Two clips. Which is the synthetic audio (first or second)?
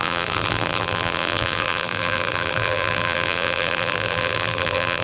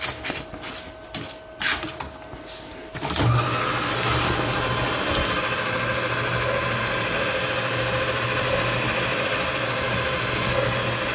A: first